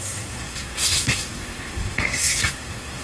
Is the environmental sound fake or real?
fake